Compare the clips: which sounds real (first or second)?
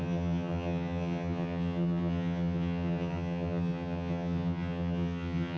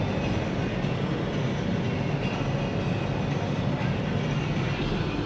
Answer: second